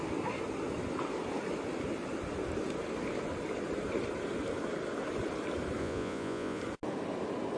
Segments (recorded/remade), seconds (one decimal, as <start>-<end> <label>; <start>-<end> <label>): 0.0-5.8 recorded; 5.8-6.6 remade; 6.6-7.6 recorded

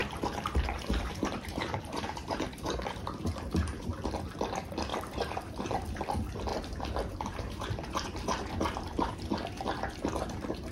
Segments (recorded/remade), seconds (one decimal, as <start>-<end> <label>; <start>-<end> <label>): 0.0-3.9 remade; 3.9-4.9 recorded; 4.9-6.0 remade; 6.0-6.5 recorded; 6.5-9.1 remade; 9.1-10.7 recorded

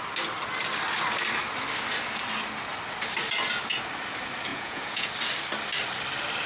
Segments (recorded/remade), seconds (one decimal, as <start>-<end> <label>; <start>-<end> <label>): 0.0-4.5 recorded; 4.5-5.1 remade; 5.1-6.5 recorded

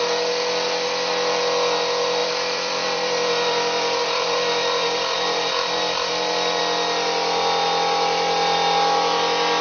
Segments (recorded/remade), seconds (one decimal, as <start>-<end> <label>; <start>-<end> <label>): 0.0-2.2 recorded; 2.2-6.6 remade; 6.6-9.6 recorded

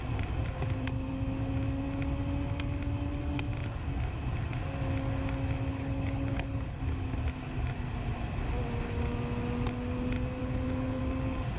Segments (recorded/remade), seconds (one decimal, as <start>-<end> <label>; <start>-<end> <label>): 0.0-5.7 recorded; 5.7-6.8 remade; 6.8-10.4 recorded; 10.4-11.0 remade; 11.0-11.6 recorded

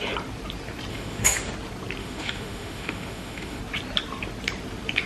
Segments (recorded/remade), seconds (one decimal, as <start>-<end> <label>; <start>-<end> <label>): 0.0-0.9 recorded; 0.9-1.5 remade; 1.5-2.0 recorded; 2.0-3.6 remade; 3.6-5.1 recorded